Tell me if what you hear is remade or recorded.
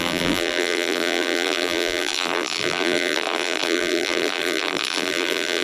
remade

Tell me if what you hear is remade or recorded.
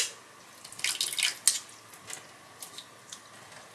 recorded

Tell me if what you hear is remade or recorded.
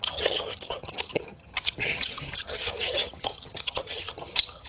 remade